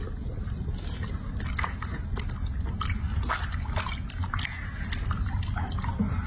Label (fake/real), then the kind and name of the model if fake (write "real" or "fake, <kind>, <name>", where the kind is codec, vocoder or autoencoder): real